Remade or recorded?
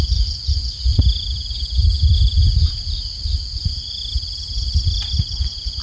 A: recorded